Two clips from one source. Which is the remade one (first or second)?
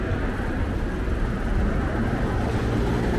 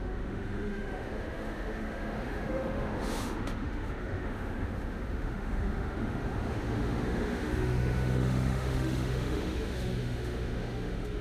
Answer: second